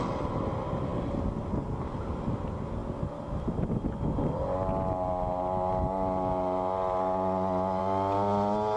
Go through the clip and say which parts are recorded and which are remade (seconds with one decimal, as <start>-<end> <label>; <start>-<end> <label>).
0.0-8.8 recorded